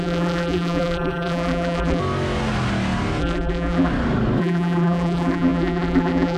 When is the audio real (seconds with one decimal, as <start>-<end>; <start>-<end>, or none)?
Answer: 2.0-3.2; 3.9-4.4